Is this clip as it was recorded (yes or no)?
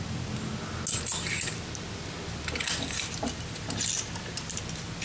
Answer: yes